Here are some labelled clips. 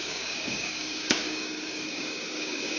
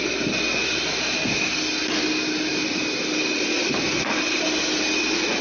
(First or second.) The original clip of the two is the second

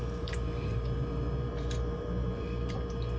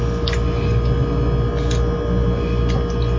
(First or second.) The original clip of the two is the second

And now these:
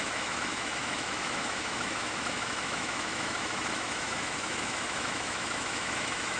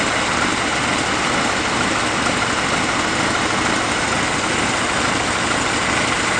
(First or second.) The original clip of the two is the second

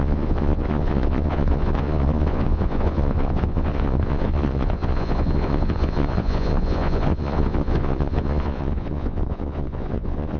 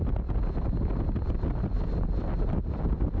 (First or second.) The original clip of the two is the second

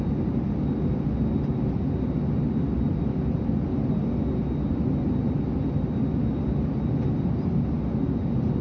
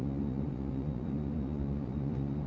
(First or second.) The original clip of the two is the first